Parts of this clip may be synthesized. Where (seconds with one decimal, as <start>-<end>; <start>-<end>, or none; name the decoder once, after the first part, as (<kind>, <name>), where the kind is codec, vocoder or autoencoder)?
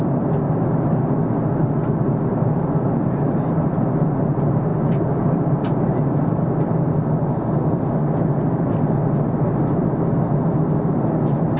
none